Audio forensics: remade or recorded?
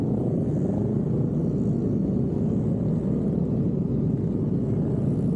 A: recorded